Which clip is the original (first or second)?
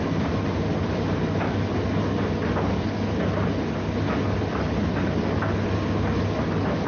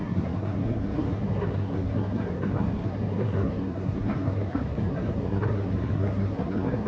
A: first